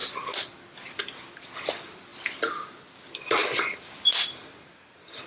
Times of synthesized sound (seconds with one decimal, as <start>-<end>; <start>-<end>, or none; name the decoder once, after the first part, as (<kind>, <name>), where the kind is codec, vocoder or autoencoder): none